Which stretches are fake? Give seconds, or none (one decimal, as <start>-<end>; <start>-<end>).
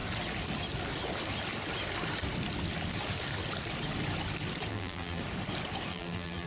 4.7-5.2; 5.9-6.5